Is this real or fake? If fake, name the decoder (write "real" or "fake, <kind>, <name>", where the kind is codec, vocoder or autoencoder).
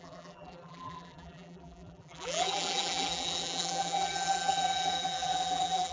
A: fake, vocoder, BigVGAN v2